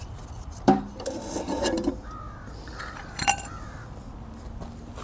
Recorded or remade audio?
recorded